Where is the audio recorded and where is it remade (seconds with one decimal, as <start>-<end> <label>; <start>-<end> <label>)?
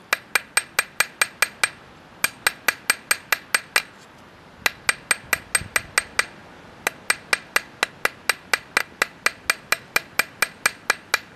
0.0-11.4 recorded